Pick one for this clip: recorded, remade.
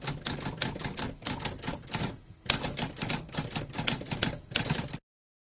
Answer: recorded